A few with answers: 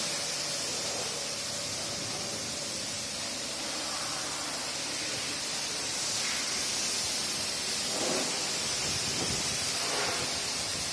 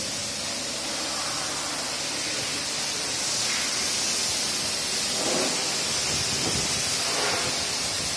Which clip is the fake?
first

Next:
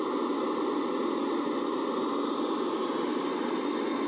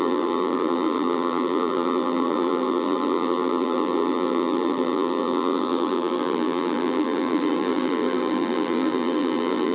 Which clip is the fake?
second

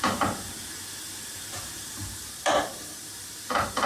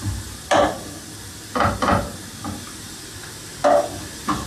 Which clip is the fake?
first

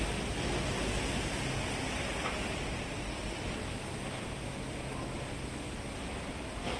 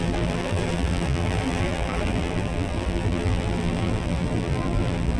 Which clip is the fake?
second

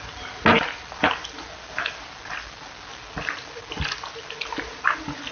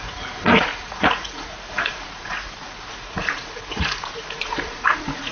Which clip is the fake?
second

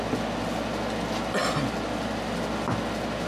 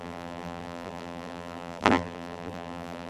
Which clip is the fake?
second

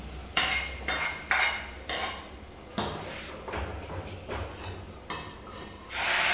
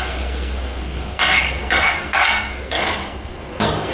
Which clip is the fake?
second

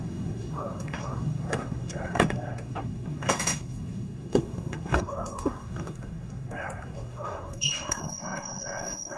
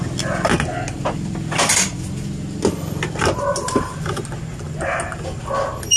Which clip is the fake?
first